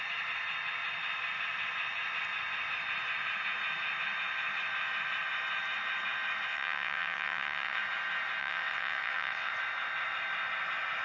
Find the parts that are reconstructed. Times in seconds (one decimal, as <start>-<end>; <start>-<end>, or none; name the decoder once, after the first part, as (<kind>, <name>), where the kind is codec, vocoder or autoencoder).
6.5-7.8 (vocoder, WaveNeXt); 8.4-9.5